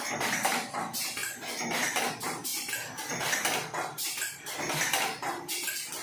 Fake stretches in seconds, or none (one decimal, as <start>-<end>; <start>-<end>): none